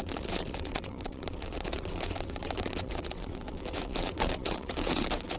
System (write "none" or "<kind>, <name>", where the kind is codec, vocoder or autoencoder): vocoder, WaveNeXt